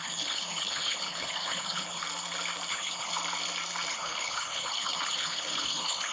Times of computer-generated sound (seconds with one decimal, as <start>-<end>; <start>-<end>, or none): 0.0-2.0; 2.7-3.1; 3.9-6.1